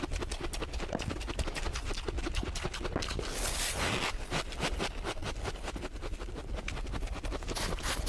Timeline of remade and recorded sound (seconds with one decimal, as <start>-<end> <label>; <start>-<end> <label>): 0.0-8.1 recorded